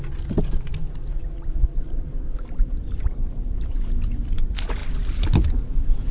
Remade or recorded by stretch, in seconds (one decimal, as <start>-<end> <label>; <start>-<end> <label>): 0.0-1.1 recorded; 1.1-3.6 remade; 3.6-6.1 recorded